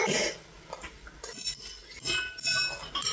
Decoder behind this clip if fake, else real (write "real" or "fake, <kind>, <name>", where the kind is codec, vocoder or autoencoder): real